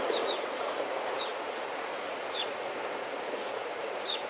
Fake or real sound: fake